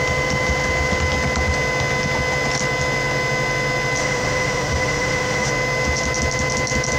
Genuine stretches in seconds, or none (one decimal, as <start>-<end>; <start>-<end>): 0.0-4.0; 5.5-7.0